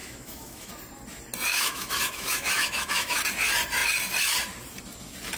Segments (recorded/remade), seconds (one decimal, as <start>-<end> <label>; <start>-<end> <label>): 0.0-0.7 remade; 0.7-1.5 recorded; 1.5-3.2 remade; 3.2-5.4 recorded